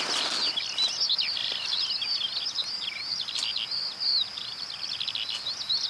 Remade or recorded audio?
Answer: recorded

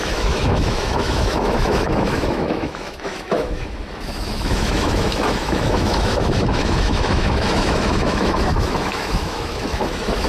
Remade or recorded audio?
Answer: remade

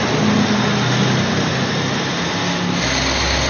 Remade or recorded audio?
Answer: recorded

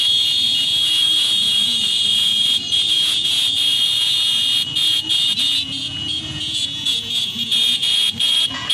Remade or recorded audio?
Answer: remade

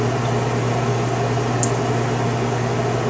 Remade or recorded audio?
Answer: recorded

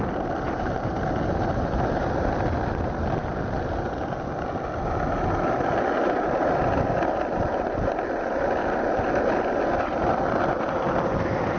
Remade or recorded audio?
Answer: recorded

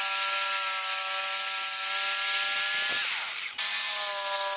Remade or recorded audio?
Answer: recorded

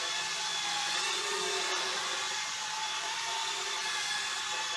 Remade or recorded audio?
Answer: remade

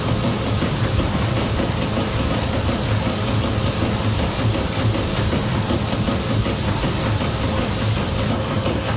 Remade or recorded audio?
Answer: recorded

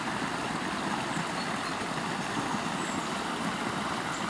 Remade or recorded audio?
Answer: recorded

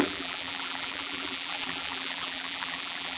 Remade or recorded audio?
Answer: remade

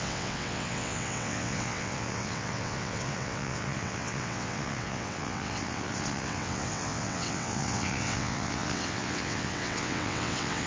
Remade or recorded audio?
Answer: remade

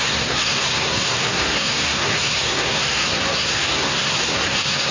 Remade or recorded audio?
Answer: remade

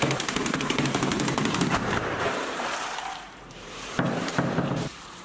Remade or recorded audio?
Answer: remade